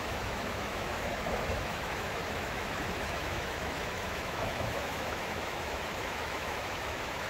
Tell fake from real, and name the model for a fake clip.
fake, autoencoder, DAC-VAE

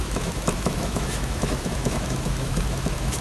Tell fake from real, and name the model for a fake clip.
fake, autoencoder, DAC-VAE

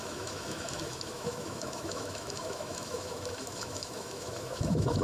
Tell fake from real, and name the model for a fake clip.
fake, autoencoder, DAC-VAE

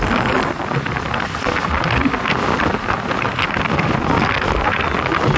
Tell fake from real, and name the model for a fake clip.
real